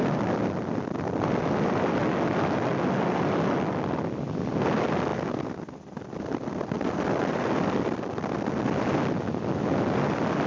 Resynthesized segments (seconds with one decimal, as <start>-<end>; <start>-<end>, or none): none